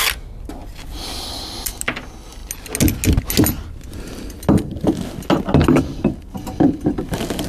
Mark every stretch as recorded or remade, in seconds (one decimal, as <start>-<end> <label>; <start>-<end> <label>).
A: 0.0-0.6 recorded; 0.6-1.7 remade; 1.7-7.5 recorded